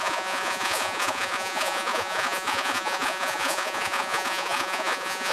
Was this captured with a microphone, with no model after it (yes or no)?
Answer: no